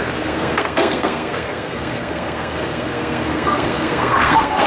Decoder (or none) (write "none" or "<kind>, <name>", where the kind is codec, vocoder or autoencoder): codec, SNAC